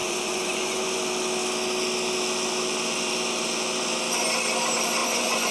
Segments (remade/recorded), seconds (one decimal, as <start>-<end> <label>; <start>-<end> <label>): 0.0-1.0 remade; 1.0-5.0 recorded; 5.0-5.5 remade